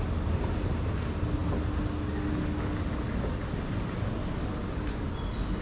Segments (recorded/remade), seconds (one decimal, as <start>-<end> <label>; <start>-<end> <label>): 0.0-5.6 recorded